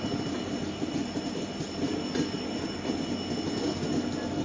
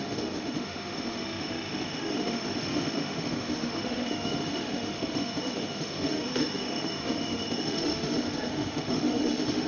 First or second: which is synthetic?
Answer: second